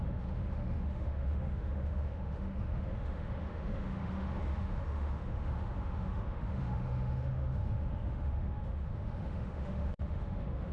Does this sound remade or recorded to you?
remade